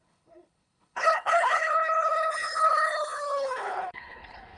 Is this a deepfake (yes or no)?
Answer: yes